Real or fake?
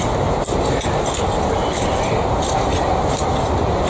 real